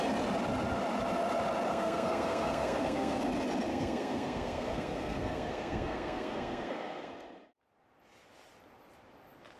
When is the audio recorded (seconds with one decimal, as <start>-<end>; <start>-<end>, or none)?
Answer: 0.0-1.7; 3.2-3.7; 7.1-9.6